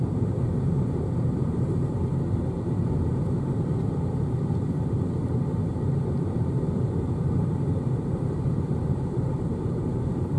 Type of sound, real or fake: fake